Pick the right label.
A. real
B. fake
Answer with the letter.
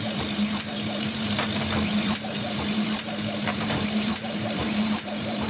B